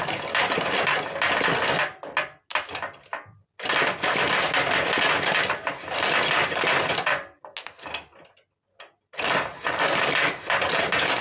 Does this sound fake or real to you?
real